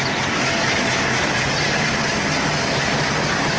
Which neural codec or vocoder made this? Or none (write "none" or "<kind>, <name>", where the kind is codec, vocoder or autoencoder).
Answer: none